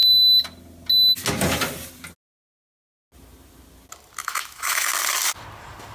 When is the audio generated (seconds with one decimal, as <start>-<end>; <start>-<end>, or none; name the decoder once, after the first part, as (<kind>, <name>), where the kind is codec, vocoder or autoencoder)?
4.2-4.9 (autoencoder, DAC-VAE)